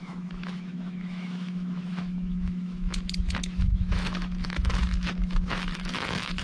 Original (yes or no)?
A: no